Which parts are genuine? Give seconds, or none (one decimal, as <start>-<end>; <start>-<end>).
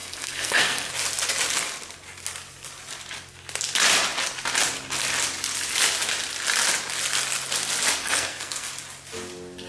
0.9-8.0; 8.7-9.7